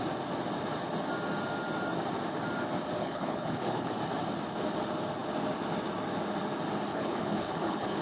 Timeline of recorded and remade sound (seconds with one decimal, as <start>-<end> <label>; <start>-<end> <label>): 0.0-3.0 recorded; 3.0-3.9 remade; 3.9-6.9 recorded; 6.9-8.0 remade